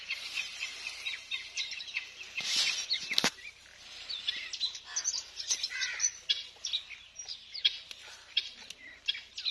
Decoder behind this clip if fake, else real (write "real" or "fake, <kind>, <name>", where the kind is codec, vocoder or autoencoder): real